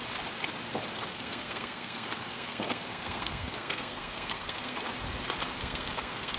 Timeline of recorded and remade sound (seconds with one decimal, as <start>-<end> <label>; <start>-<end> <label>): 0.0-1.1 recorded; 1.1-4.9 remade; 4.9-5.6 recorded; 5.6-6.4 remade